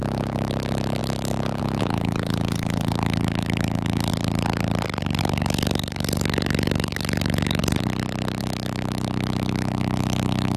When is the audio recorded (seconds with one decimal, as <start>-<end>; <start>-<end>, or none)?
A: 4.1-5.2; 7.6-8.4